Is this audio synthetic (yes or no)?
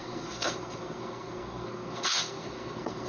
yes